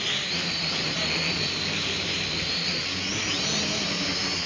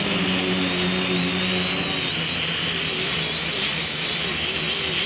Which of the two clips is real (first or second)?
second